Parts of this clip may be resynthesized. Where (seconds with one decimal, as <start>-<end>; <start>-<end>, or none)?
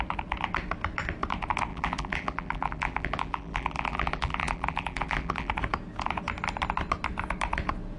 1.7-5.5